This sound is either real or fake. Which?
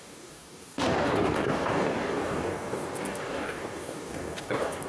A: fake